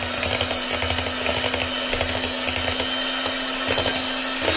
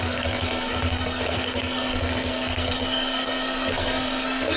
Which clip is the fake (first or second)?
second